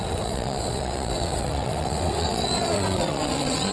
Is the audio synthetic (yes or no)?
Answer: yes